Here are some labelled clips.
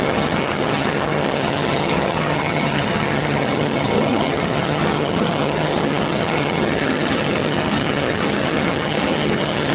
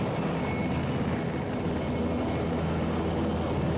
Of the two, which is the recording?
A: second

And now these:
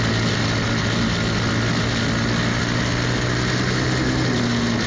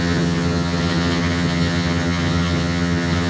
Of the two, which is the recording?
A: first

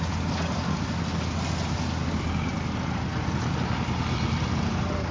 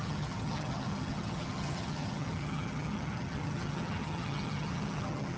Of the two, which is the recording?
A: first